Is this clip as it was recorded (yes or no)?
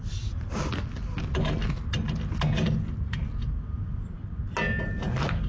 yes